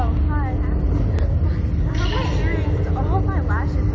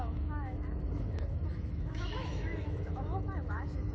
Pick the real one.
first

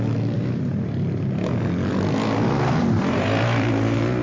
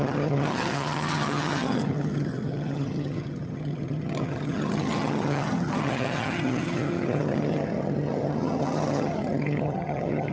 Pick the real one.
first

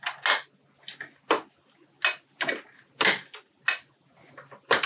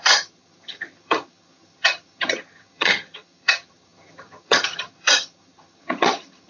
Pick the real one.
first